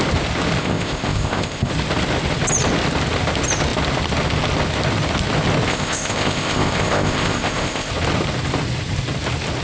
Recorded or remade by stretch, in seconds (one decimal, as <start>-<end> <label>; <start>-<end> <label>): 0.0-0.6 recorded; 0.6-1.7 remade; 1.7-5.7 recorded; 5.7-7.9 remade; 7.9-9.6 recorded